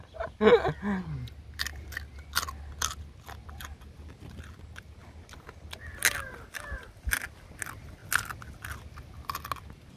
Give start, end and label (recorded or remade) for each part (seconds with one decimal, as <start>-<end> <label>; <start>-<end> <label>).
0.0-10.0 recorded